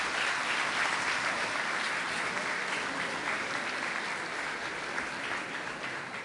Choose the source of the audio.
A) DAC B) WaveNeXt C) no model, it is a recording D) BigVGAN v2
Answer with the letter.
C